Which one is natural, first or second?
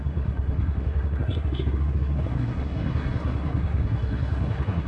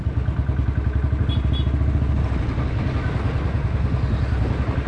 second